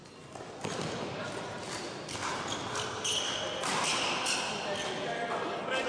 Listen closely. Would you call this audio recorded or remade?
recorded